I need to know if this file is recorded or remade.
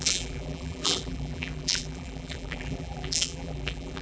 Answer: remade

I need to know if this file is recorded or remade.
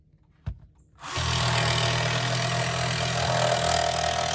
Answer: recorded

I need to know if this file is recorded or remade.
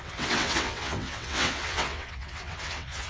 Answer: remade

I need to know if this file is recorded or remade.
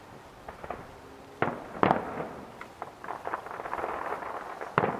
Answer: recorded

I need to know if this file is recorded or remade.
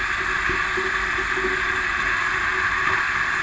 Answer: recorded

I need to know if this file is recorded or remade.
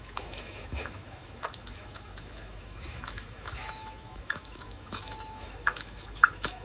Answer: remade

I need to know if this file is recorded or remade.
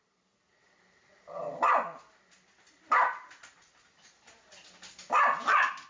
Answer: recorded